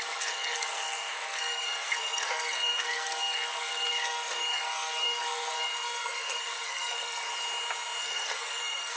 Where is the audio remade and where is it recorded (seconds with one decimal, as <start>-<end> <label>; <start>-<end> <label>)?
0.0-7.3 remade; 7.3-8.0 recorded; 8.0-9.0 remade